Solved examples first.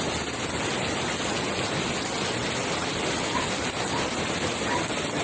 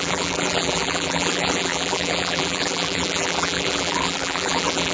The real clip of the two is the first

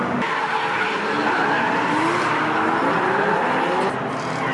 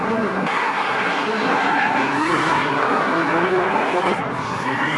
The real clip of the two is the first